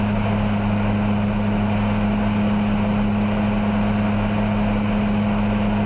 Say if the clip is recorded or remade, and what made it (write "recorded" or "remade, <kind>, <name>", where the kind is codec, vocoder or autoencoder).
recorded